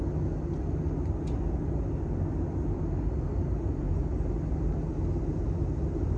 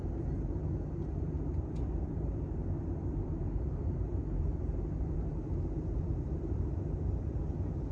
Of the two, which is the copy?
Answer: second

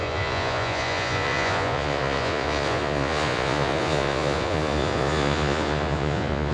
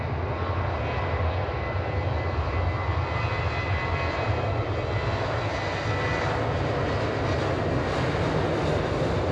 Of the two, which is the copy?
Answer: first